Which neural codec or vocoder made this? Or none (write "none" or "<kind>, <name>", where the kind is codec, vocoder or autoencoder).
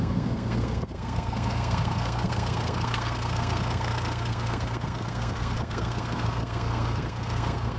codec, SNAC